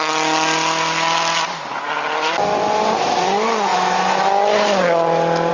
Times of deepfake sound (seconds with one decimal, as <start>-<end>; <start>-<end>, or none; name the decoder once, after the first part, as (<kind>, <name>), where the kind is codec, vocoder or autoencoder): none